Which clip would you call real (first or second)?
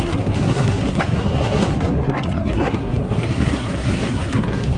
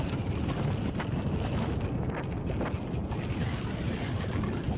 second